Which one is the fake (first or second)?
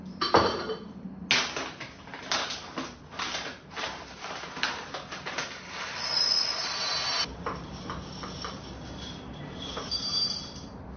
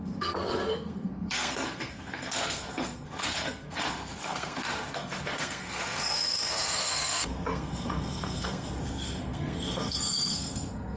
second